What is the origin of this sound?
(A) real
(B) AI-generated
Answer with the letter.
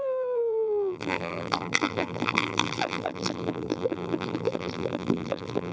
B